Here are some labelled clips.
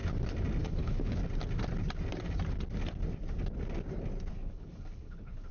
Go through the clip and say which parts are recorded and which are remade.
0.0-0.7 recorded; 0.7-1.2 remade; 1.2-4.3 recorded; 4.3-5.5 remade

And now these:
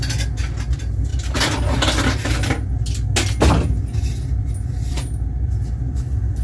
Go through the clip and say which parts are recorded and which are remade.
0.0-6.4 recorded

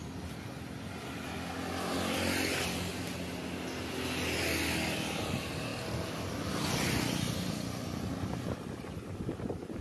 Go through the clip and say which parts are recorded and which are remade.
0.0-9.8 recorded

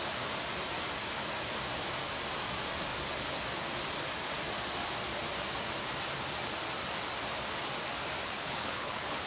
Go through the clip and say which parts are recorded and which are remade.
0.0-8.2 recorded; 8.2-9.3 remade